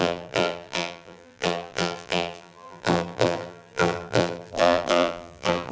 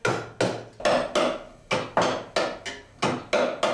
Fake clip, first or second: first